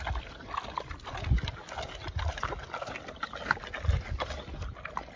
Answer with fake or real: real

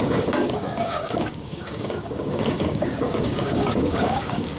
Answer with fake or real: fake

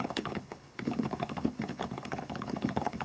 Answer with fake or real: fake